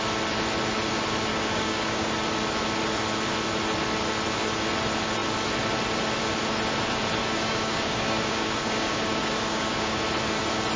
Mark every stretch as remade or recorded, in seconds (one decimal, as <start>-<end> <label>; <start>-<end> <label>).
0.0-1.3 recorded; 1.3-2.1 remade; 2.1-7.2 recorded; 7.2-10.0 remade; 10.0-10.8 recorded